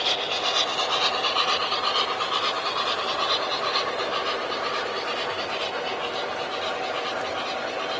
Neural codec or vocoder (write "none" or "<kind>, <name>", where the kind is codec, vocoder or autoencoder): none